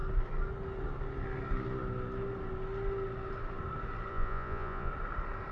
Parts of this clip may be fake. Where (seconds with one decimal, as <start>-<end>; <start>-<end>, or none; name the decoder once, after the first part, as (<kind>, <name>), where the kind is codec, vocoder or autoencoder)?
4.1-4.9 (vocoder, Vocos)